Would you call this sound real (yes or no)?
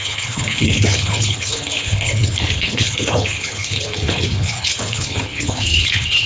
no